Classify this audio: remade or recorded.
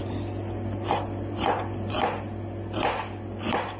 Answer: recorded